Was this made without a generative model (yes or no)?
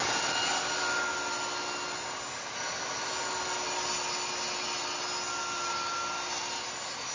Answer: yes